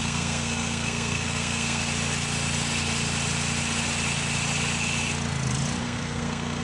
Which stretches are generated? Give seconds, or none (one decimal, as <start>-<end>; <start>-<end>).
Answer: 0.0-1.8; 5.8-6.6